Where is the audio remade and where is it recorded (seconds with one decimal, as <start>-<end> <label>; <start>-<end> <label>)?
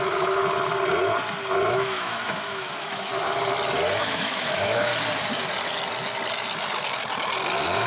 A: 0.0-0.4 remade; 0.4-1.7 recorded; 1.7-3.1 remade; 3.1-4.0 recorded; 4.0-4.9 remade; 4.9-7.9 recorded